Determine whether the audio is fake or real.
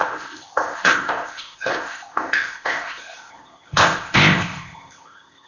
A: fake